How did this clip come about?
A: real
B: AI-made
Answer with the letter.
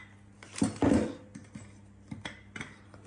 A